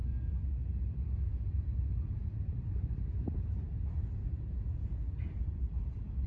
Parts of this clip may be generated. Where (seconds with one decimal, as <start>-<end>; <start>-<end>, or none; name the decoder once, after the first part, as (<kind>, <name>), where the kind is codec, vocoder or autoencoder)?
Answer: none